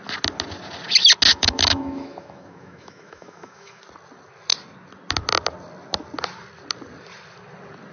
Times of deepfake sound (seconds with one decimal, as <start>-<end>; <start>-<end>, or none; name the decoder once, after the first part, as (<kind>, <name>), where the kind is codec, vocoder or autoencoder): 1.3-3.8 (autoencoder, DAC-VAE)